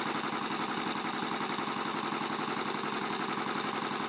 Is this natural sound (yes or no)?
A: yes